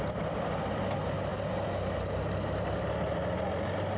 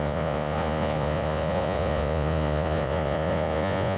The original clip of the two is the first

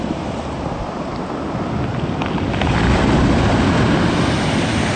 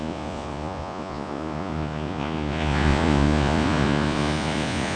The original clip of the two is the first